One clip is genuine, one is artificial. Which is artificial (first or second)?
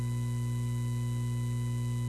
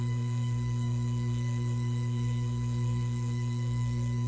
second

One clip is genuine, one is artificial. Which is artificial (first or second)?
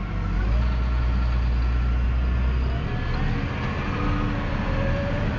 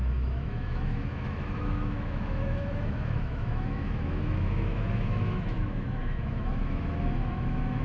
second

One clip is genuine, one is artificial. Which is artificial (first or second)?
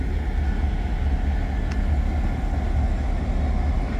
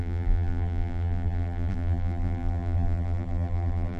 second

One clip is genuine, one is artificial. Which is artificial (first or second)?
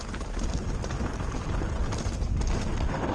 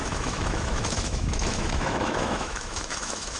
second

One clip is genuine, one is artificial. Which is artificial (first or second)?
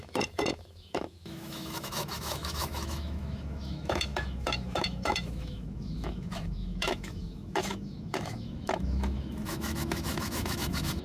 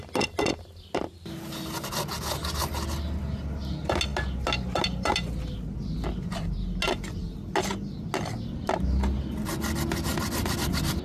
first